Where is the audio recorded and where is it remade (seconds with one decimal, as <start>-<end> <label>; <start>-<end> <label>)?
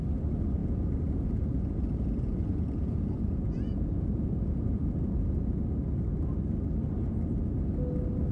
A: 0.0-0.6 recorded; 0.6-5.6 remade; 5.6-8.3 recorded